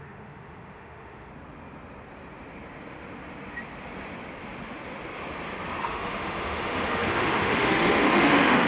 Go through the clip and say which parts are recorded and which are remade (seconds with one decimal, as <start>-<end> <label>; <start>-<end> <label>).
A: 0.0-1.3 remade; 1.3-5.8 recorded; 5.8-8.7 remade